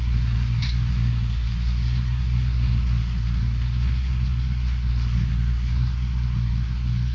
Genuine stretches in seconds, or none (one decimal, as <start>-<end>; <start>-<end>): none